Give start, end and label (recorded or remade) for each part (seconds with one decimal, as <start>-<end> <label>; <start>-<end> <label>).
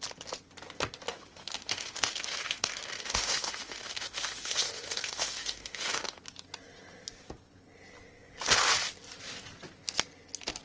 0.0-1.1 recorded; 1.1-6.2 remade; 6.2-10.6 recorded